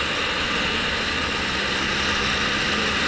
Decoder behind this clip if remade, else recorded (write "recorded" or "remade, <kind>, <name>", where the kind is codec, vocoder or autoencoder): recorded